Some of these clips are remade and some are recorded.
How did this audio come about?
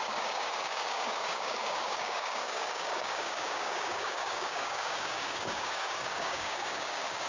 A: remade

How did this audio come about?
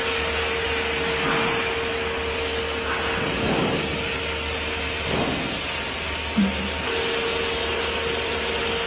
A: recorded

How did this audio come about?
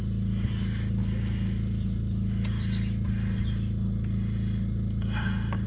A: recorded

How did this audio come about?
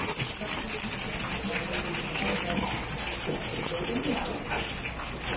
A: recorded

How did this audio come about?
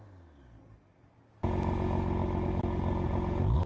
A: recorded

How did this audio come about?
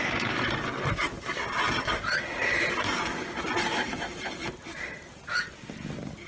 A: remade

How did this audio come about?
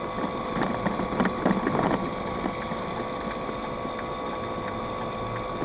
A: recorded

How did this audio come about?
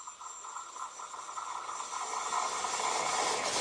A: recorded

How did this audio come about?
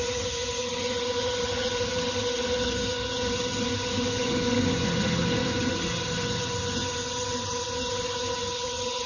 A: remade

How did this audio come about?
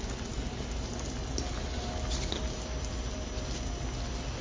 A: recorded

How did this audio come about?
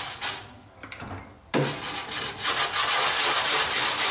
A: recorded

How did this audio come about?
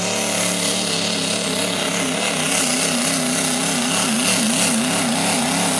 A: recorded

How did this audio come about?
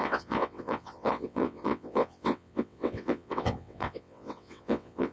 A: remade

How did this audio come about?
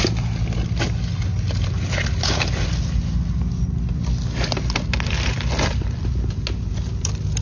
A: recorded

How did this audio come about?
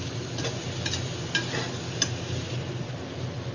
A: recorded